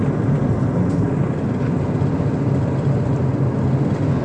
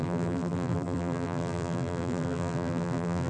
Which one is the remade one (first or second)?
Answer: second